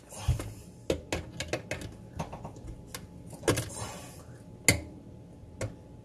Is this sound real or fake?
real